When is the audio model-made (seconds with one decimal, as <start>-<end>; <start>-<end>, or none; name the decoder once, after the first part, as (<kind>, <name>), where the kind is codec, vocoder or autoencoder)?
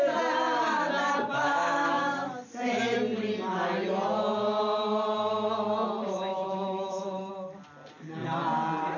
1.3-2.0 (autoencoder, DAC-VAE); 6.3-7.3